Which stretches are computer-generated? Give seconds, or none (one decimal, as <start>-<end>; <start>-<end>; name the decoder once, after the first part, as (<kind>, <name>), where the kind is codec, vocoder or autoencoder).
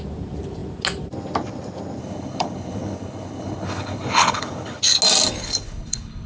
2.0-4.8 (codec, HILCodec); 5.4-6.3